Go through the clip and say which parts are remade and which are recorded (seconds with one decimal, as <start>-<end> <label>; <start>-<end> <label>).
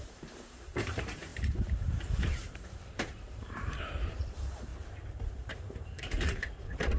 0.0-4.7 remade; 4.7-5.3 recorded; 5.3-7.0 remade